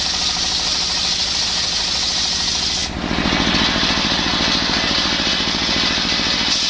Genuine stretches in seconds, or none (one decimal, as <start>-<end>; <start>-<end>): 0.0-6.7